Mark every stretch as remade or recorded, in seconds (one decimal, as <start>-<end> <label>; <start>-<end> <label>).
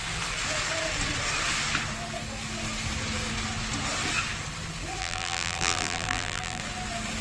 0.0-5.0 recorded; 5.0-6.6 remade; 6.6-7.2 recorded